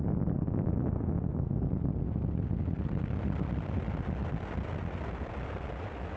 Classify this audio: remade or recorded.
recorded